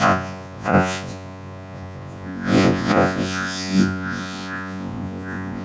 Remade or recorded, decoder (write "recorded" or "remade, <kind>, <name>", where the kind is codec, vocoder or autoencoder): remade, vocoder, Vocos